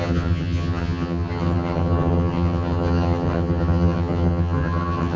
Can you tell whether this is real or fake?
fake